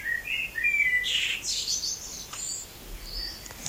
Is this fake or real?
real